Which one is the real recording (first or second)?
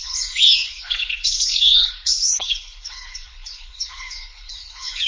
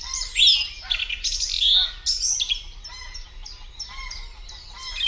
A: second